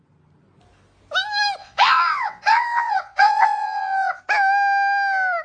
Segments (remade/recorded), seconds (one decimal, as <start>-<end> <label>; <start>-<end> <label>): 0.0-1.6 recorded; 1.6-4.2 remade; 4.2-5.4 recorded